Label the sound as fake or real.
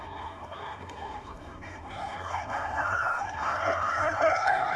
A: fake